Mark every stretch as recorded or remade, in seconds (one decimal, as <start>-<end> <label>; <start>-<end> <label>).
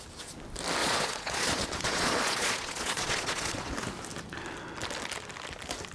0.0-0.8 recorded; 0.8-3.7 remade; 3.7-5.9 recorded